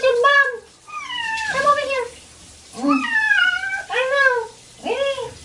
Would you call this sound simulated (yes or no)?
yes